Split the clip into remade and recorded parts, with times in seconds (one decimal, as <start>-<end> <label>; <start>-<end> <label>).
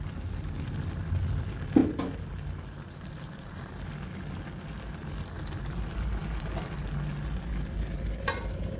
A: 0.0-8.8 recorded